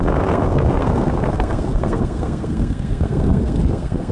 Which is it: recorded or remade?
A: remade